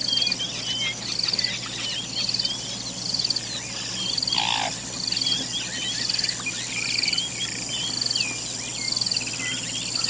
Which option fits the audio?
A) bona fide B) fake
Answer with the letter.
A